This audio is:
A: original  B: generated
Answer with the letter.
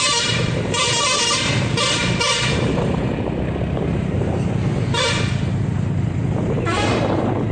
B